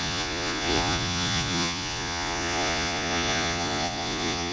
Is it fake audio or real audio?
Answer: fake